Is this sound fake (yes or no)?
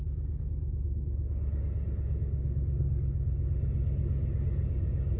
no